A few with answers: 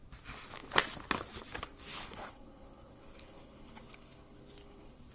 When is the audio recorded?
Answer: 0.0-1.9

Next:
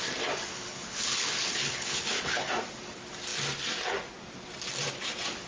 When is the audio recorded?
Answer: 0.0-0.5; 2.5-5.5

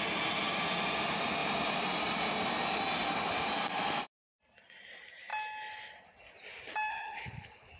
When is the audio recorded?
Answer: 0.0-6.9

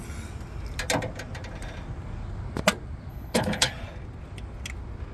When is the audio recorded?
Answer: 0.0-3.1; 3.7-5.1